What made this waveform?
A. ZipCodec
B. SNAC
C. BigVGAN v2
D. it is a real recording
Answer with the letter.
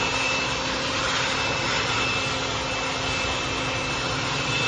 D